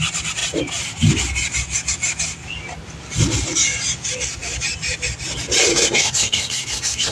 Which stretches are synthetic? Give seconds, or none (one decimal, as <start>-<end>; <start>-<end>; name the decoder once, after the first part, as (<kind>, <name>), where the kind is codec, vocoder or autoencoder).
5.7-7.1 (codec, SNAC)